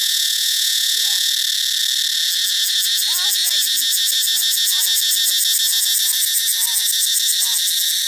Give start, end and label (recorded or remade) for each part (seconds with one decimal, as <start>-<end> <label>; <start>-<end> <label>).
0.0-1.3 remade; 1.3-8.1 recorded